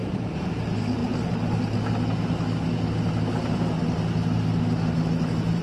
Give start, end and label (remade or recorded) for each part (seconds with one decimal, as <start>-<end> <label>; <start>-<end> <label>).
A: 0.0-0.5 remade; 0.5-5.6 recorded